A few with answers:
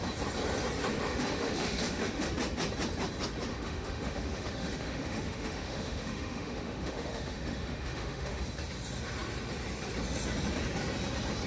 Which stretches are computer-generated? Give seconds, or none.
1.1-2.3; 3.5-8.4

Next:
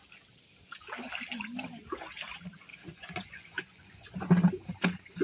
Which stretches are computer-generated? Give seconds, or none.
2.7-4.2

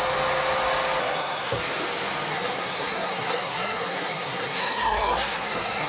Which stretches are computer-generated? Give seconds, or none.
1.0-1.6; 2.3-5.9

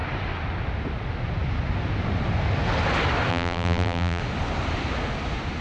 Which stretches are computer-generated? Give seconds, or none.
3.3-4.2

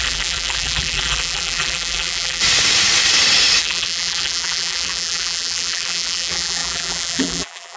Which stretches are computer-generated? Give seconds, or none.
0.0-2.4; 3.6-7.8

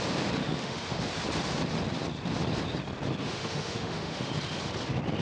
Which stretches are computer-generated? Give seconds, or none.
0.4-1.0; 3.2-4.3